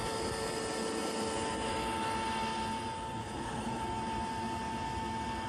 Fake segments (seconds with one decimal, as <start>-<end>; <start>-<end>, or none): 3.2-3.8